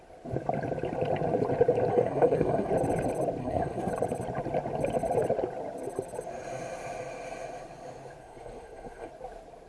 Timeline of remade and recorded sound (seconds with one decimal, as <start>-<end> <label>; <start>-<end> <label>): 0.0-1.9 recorded; 1.9-2.7 remade; 2.7-3.4 recorded; 3.4-3.9 remade; 3.9-8.2 recorded; 8.2-9.1 remade; 9.1-9.7 recorded